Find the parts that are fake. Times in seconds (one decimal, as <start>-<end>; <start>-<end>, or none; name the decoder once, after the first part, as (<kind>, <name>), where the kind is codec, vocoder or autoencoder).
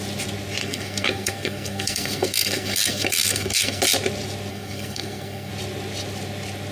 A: 0.6-3.8 (codec, SNAC); 4.5-5.5